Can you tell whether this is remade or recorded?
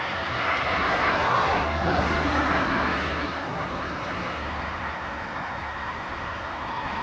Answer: remade